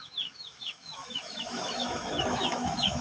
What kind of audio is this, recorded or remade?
remade